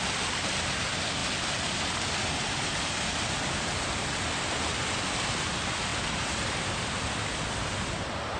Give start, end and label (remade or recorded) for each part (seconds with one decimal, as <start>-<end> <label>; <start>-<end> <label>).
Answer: 0.0-8.4 recorded